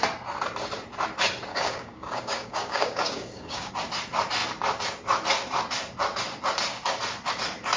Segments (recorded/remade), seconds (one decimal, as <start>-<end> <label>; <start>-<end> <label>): 0.0-1.5 recorded; 1.5-3.7 remade; 3.7-7.8 recorded